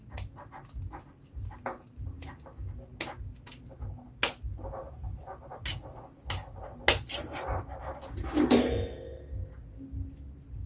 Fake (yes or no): no